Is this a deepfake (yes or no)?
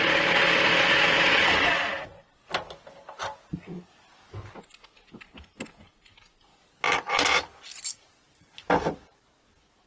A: no